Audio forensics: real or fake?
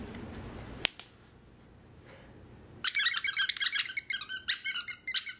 real